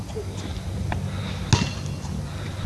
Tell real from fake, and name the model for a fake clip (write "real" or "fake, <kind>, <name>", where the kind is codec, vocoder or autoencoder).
real